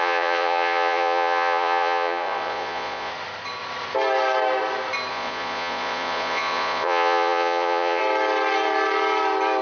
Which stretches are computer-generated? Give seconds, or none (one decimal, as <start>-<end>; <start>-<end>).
0.0-3.1; 5.1-8.0